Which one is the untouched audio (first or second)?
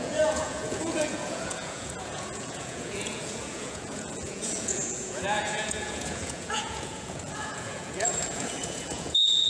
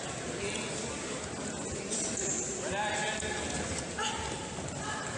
second